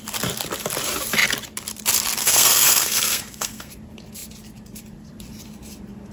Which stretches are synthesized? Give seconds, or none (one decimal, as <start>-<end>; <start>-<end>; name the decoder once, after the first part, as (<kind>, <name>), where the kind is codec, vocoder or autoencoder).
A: 2.2-3.7 (codec, SNAC)